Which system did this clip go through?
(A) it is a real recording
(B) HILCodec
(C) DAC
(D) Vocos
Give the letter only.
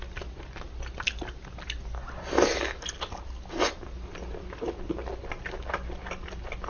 A